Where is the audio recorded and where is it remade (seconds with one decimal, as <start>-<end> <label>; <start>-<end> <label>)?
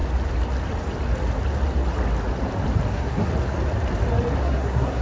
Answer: 0.0-2.9 recorded; 2.9-3.3 remade; 3.3-4.4 recorded; 4.4-5.0 remade